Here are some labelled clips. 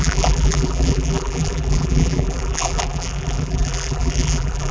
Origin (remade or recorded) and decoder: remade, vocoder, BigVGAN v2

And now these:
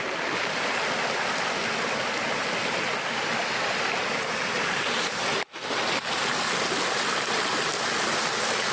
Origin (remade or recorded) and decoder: recorded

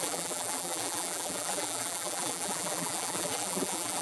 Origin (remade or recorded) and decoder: remade, vocoder, BigVGAN v2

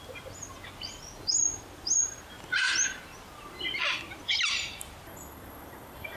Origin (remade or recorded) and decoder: recorded